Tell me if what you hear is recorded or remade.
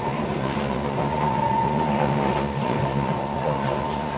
remade